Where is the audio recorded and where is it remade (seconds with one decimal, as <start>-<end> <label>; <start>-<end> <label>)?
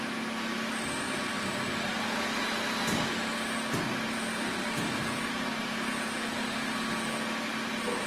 0.0-8.1 recorded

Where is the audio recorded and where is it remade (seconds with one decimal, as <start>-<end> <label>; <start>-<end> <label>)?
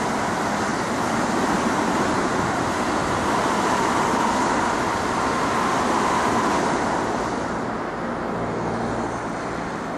0.0-10.0 recorded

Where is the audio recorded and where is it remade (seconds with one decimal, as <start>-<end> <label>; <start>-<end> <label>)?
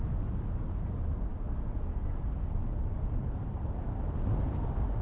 0.0-5.0 recorded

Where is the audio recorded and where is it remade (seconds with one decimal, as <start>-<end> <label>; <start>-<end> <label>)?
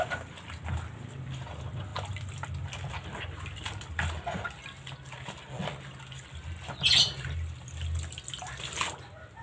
0.0-9.4 recorded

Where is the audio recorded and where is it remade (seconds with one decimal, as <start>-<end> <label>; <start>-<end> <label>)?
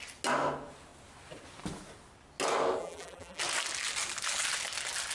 0.0-2.8 recorded; 2.8-3.4 remade; 3.4-5.1 recorded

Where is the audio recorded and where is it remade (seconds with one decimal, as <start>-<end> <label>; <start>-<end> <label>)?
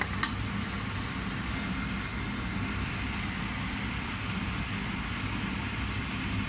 0.0-2.1 recorded; 2.1-6.0 remade; 6.0-6.5 recorded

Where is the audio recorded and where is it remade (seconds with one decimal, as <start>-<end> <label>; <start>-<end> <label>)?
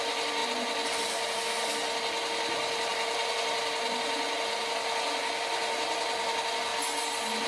0.0-7.5 recorded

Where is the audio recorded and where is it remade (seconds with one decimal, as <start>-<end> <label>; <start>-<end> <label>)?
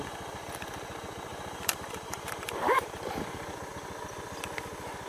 0.0-1.3 recorded; 1.3-3.3 remade; 3.3-5.1 recorded